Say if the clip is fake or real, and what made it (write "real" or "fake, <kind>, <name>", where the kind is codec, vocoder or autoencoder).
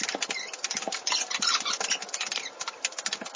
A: real